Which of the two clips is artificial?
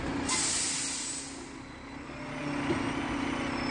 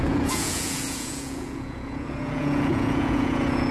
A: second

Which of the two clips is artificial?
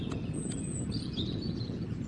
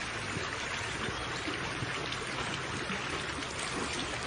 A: first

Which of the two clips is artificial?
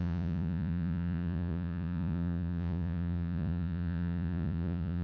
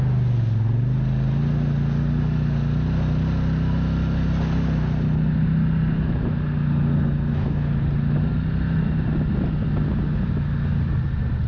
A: first